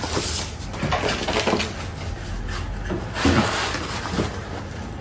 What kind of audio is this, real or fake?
real